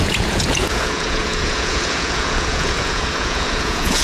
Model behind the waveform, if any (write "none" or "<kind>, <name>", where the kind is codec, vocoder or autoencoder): vocoder, Vocos